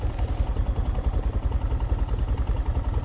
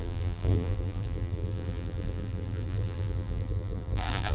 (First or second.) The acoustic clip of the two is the first